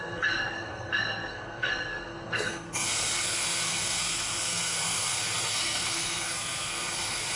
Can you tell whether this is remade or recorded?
remade